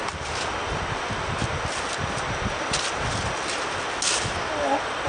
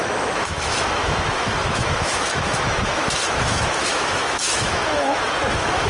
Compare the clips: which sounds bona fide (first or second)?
first